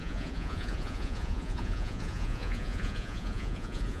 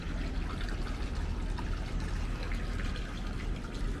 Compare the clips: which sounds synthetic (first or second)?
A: first